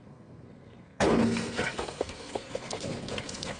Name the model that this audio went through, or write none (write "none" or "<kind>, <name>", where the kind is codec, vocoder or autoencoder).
codec, SNAC